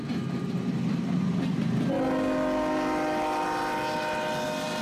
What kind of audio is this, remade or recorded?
recorded